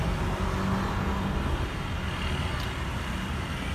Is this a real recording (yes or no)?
yes